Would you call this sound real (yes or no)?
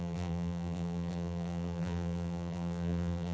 no